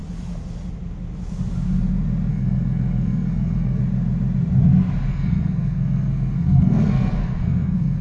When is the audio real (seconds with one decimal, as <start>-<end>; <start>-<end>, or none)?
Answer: 0.0-2.3; 3.8-5.1

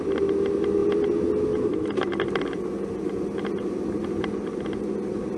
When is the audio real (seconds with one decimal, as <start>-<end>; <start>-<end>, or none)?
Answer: 0.0-5.4

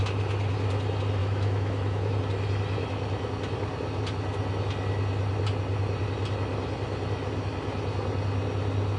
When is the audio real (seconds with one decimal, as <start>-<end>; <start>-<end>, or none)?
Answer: 0.0-1.2; 2.1-9.0